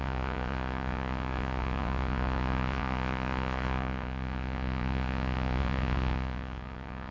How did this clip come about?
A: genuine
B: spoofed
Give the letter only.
B